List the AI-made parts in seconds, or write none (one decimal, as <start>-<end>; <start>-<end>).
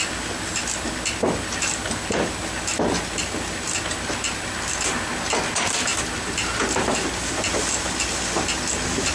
none